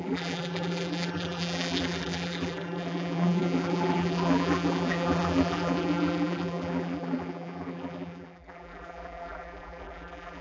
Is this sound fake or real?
fake